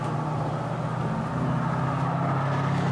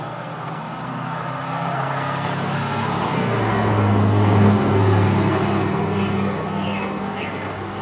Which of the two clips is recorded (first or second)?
first